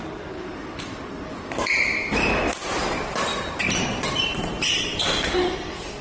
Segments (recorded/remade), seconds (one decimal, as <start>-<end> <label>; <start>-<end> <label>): 0.0-3.3 recorded; 3.3-4.6 remade; 4.6-6.0 recorded